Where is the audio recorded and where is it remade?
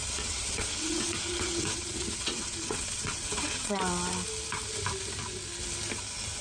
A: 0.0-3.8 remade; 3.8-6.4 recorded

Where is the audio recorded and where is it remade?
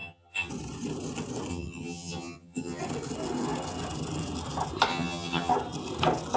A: 0.0-0.5 remade; 0.5-1.5 recorded; 1.5-2.8 remade; 2.8-4.9 recorded; 4.9-5.5 remade; 5.5-6.4 recorded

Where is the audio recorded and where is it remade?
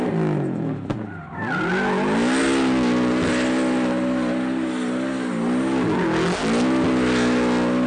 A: 0.0-7.9 recorded